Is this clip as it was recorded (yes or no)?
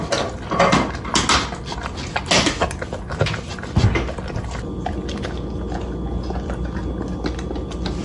yes